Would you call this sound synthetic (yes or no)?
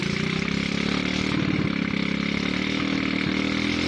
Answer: no